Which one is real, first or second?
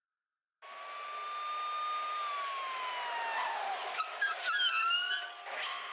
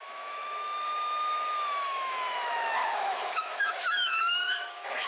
first